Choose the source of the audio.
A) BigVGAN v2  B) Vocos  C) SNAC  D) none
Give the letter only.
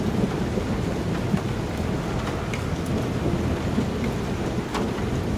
D